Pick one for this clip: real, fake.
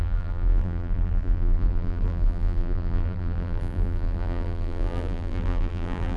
fake